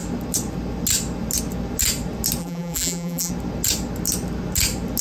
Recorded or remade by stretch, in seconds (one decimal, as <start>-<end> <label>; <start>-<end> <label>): 0.0-2.4 recorded; 2.4-3.3 remade; 3.3-5.0 recorded